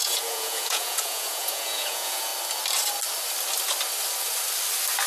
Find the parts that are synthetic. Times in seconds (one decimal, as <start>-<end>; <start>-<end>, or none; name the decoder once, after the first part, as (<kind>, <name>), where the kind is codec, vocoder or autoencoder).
0.0-2.3 (vocoder, Vocos)